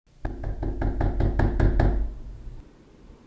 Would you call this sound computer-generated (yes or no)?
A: no